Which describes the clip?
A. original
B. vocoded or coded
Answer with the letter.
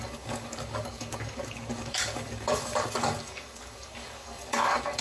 B